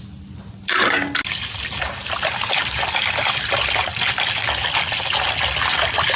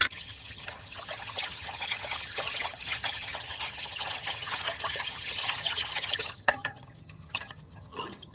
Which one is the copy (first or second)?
second